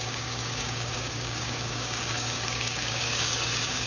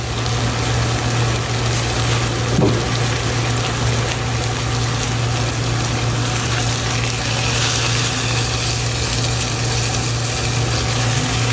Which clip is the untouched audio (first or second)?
second